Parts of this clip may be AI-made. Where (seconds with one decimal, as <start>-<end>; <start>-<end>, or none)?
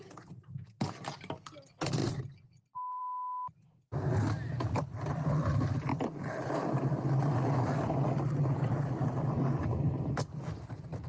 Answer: none